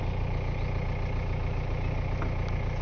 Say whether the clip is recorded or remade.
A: recorded